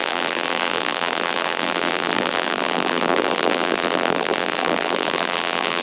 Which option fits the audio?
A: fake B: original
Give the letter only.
A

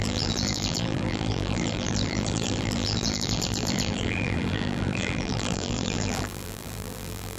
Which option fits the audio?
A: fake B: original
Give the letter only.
A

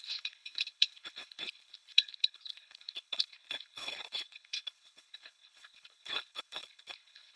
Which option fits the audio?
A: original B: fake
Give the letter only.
B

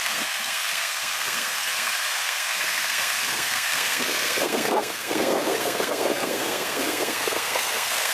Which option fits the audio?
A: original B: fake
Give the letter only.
B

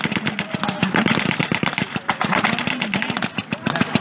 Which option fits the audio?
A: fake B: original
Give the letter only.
B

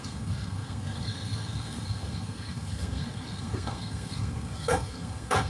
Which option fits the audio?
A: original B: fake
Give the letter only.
B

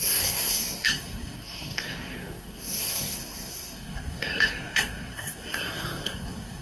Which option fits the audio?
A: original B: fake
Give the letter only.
B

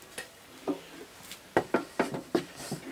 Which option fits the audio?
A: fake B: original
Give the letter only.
B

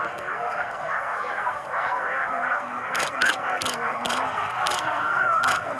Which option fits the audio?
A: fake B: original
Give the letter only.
A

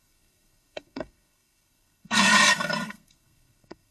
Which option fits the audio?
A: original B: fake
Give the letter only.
B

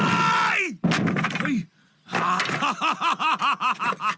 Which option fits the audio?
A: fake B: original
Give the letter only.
B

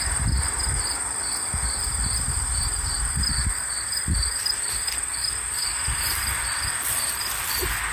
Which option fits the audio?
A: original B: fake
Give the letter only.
A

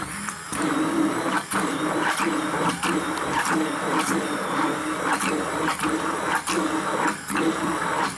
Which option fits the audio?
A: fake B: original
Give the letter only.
A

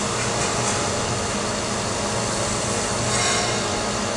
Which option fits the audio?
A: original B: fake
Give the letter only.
A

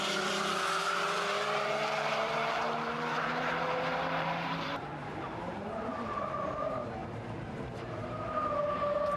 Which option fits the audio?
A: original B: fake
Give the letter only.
B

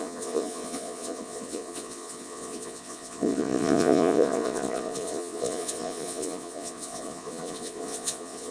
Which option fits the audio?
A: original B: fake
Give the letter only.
B